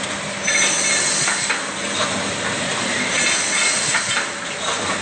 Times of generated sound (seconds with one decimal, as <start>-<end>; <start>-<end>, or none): 2.7-5.0